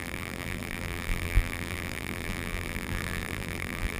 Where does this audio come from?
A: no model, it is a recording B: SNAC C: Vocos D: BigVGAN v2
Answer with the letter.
D